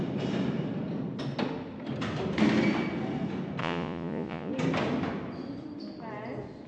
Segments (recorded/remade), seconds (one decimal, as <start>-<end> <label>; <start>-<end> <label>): 0.0-3.6 recorded; 3.6-4.5 remade; 4.5-6.7 recorded

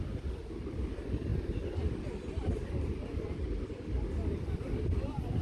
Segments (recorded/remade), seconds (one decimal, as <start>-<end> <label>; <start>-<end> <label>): 0.0-5.4 recorded

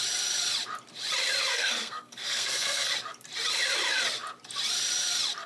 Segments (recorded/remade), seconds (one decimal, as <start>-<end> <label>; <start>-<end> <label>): 0.0-1.5 recorded; 1.5-2.9 remade; 2.9-5.5 recorded

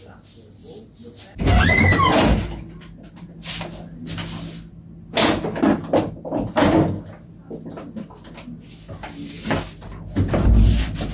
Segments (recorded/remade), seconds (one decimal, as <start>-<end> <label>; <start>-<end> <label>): 0.0-11.1 recorded

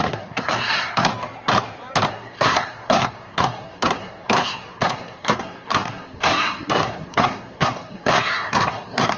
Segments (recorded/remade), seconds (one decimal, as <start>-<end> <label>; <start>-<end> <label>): 0.0-1.1 remade; 1.1-2.1 recorded; 2.1-9.2 remade

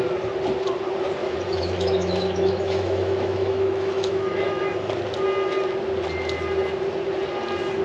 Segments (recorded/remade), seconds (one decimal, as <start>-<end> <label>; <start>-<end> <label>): 0.0-1.2 recorded; 1.2-4.9 remade; 4.9-7.8 recorded

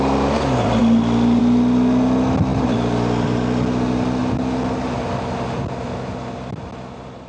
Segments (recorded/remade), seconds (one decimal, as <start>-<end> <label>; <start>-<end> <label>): 0.0-0.8 recorded; 0.8-1.4 remade; 1.4-7.3 recorded